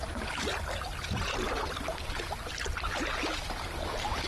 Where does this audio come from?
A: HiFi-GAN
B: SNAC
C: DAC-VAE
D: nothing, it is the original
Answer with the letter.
D